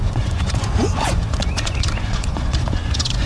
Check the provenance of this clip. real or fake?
fake